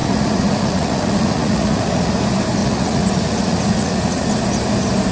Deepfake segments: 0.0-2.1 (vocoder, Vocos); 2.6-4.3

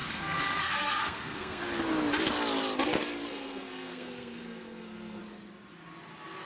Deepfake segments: 0.0-1.6 (codec, SNAC); 3.3-5.2

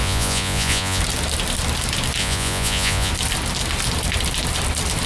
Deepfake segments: 0.0-1.0 (vocoder, Vocos); 2.2-3.1

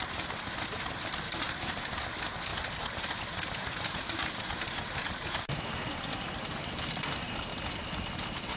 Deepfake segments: none

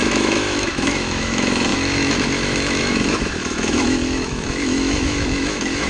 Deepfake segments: 0.0-5.9 (autoencoder, DAC-VAE)